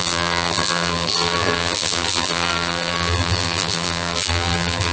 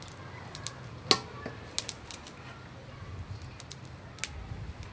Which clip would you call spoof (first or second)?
first